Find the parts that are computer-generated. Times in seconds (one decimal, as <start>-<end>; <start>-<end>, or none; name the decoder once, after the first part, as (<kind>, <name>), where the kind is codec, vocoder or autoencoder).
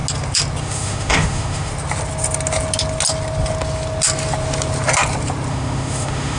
0.6-1.7 (autoencoder, DAC-VAE); 5.5-6.4